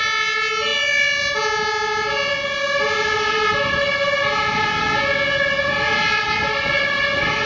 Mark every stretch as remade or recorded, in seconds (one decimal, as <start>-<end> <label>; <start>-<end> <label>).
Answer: 0.0-7.5 recorded